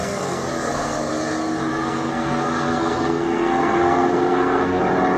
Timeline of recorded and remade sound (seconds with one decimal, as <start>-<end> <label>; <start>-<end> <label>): 0.0-1.1 remade; 1.1-1.7 recorded; 1.7-4.8 remade; 4.8-5.2 recorded